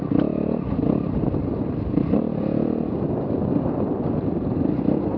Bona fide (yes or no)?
yes